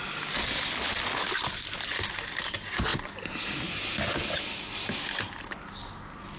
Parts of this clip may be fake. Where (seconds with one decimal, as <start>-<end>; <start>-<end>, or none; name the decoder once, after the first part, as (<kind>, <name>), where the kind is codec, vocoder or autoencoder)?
none

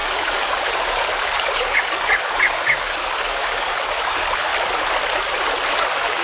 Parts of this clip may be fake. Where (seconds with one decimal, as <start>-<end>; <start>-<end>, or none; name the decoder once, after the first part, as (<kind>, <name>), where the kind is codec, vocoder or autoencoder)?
0.0-4.5 (codec, DAC); 5.7-6.2